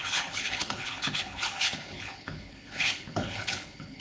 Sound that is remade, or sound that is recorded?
remade